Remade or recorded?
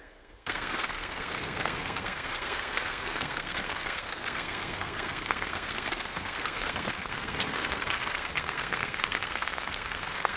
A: remade